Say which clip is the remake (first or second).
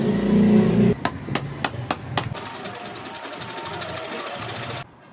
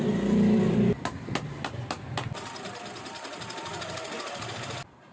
second